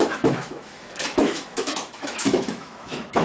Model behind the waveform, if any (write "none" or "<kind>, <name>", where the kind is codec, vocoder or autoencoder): autoencoder, DAC-VAE